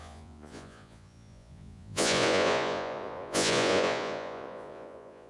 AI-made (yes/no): yes